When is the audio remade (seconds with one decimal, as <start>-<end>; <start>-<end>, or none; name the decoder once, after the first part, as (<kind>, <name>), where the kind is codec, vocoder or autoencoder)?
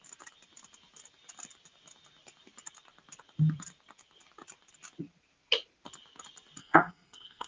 6.6-7.5 (codec, SNAC)